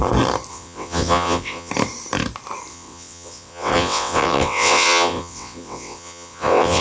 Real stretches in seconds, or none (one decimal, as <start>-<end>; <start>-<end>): 0.0-0.5; 1.7-2.7